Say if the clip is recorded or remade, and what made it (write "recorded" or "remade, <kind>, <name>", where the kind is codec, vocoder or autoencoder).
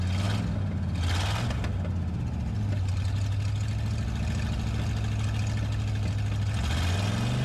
recorded